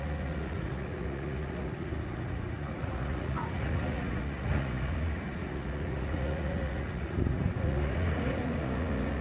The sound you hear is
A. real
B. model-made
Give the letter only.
B